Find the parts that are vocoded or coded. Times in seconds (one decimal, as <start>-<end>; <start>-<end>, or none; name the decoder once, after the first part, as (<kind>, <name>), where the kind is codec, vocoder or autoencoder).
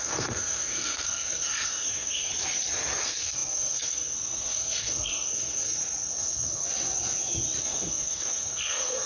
0.0-2.3 (codec, SNAC); 3.0-6.6; 7.6-9.1